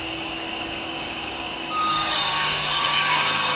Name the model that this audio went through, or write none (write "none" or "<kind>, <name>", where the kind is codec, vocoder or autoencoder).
codec, DAC